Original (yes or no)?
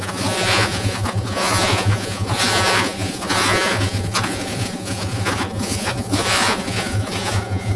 no